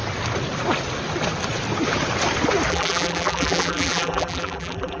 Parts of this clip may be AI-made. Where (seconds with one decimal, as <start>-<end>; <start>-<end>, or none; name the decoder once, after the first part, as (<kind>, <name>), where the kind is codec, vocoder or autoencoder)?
2.7-5.0 (vocoder, BigVGAN v2)